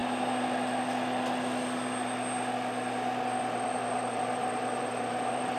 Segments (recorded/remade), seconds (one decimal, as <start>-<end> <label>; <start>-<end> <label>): 0.0-3.4 recorded; 3.4-5.6 remade